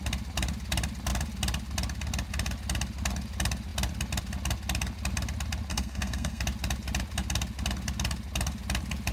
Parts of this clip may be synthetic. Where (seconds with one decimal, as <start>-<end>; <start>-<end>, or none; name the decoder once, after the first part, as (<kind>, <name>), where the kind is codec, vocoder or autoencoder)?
5.7-6.4 (codec, SNAC)